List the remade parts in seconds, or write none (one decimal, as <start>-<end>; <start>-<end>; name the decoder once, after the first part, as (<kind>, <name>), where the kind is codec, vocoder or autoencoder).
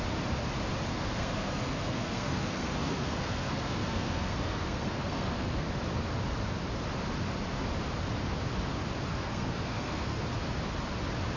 0.9-5.7 (codec, SNAC); 9.1-10.2